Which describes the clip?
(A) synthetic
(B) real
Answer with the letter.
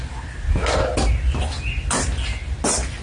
B